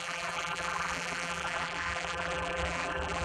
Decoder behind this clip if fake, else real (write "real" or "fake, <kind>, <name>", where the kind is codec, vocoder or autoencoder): fake, vocoder, BigVGAN v2